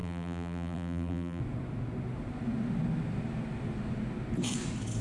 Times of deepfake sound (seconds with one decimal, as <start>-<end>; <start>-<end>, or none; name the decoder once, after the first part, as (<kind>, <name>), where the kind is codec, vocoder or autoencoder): 0.0-1.4 (vocoder, BigVGAN v2)